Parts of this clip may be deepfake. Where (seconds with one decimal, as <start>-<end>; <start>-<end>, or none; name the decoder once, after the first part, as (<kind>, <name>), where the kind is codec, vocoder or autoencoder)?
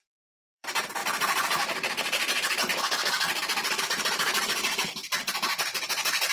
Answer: 0.0-5.0 (vocoder, BigVGAN v2); 5.6-6.3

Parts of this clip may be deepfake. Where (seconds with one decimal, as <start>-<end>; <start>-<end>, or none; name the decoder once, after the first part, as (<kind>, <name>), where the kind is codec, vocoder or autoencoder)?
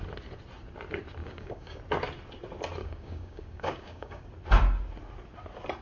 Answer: 1.2-1.8 (codec, DAC); 2.8-4.3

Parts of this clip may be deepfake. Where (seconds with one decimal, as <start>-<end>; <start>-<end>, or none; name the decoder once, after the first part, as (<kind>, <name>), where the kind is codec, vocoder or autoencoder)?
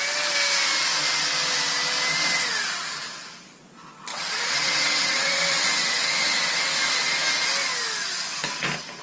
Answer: 4.1-6.6 (vocoder, WaveNeXt)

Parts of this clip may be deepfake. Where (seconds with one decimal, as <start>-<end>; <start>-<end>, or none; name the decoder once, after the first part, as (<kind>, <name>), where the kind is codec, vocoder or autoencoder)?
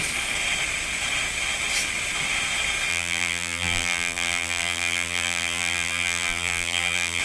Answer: 2.9-7.2 (vocoder, BigVGAN v2)